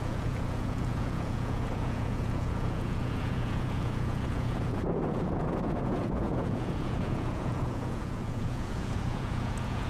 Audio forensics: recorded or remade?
remade